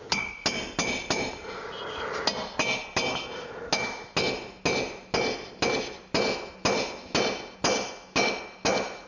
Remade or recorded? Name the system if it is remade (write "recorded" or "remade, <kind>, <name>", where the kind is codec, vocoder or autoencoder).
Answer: recorded